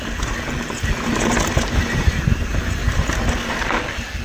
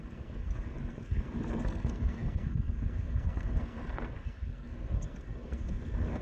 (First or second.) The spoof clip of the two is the second